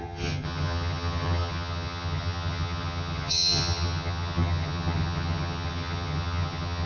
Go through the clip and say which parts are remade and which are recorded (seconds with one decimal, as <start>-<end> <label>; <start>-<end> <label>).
0.0-6.9 remade